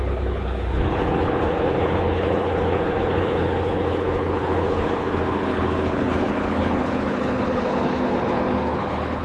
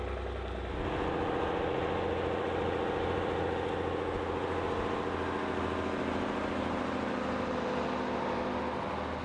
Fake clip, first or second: first